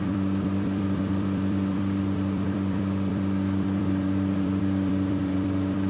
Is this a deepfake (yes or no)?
yes